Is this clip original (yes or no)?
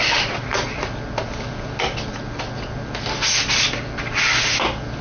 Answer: yes